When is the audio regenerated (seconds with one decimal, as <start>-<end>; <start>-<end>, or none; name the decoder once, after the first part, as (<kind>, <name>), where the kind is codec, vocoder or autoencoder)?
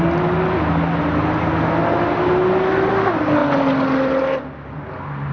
none